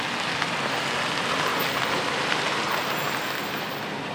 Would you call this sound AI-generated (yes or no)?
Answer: no